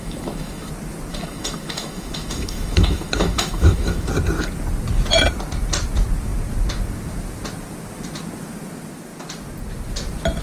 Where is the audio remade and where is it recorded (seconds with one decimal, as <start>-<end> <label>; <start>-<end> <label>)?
0.0-0.7 remade; 0.7-1.1 recorded; 1.1-4.1 remade; 4.1-10.4 recorded